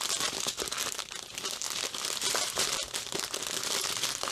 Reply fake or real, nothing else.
real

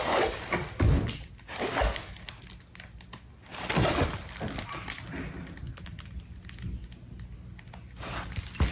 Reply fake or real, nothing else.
real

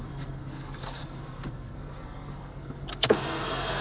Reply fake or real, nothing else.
fake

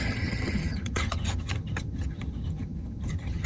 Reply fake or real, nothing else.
fake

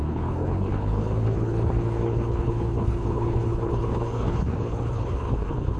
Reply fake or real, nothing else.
fake